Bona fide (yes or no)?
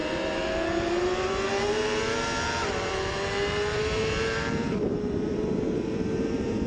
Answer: no